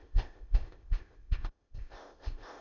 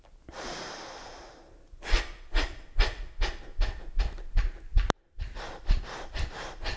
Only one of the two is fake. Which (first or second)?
first